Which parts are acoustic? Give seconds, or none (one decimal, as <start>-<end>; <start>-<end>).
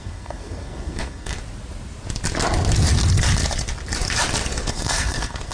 1.4-4.7